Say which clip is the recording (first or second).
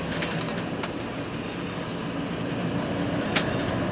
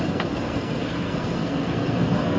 first